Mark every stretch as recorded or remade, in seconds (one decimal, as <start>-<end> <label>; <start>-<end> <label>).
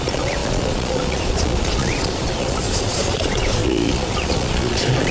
0.0-5.1 remade